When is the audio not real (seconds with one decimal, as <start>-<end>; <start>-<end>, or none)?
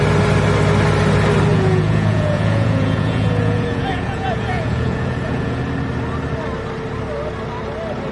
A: 1.5-5.6